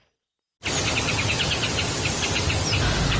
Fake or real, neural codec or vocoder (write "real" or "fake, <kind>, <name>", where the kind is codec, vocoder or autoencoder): real